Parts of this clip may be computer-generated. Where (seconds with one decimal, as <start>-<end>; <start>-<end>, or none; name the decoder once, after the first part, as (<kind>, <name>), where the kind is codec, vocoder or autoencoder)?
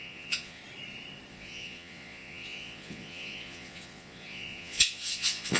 0.0-0.6 (vocoder, Vocos); 1.3-5.6